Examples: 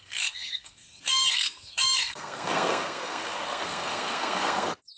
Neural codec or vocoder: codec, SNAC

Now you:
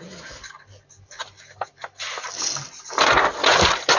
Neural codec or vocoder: none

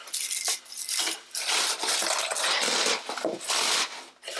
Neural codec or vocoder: none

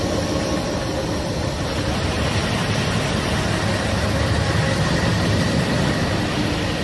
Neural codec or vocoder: none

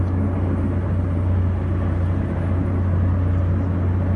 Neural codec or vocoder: none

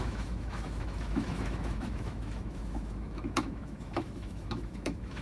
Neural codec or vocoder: autoencoder, DAC-VAE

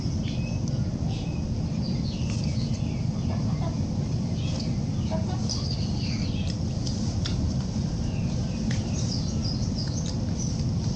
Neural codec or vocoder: none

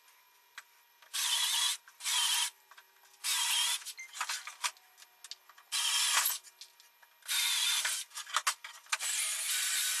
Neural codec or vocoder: none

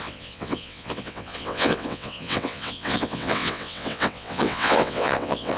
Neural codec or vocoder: vocoder, WaveNeXt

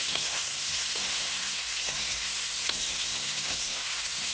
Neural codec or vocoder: codec, SNAC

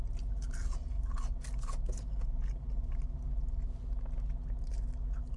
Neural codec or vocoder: none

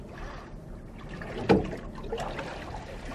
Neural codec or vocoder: vocoder, BigVGAN v2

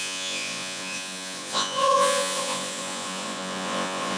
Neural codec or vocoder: vocoder, Vocos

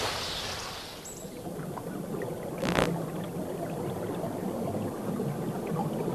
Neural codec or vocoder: none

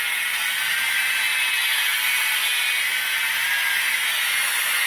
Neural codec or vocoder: none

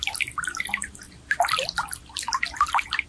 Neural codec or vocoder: none